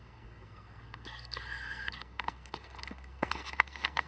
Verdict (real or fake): fake